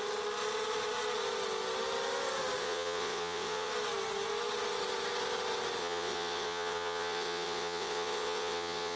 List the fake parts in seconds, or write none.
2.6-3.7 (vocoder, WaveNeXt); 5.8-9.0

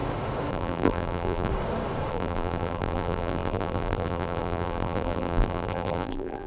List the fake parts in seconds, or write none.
0.5-1.5 (vocoder, BigVGAN v2); 2.1-6.5

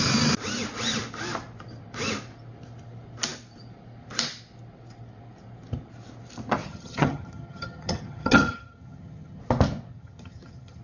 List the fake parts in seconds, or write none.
6.6-9.4 (vocoder, HiFi-GAN); 9.9-10.8

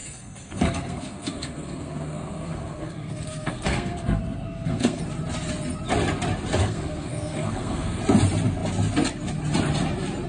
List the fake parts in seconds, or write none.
0.0-5.0 (codec, SNAC); 6.6-8.0

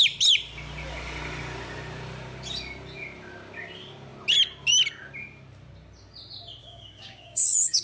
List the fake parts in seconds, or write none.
6.6-7.8 (codec, DAC)